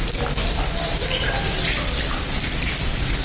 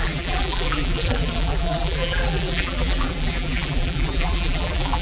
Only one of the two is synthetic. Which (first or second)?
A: second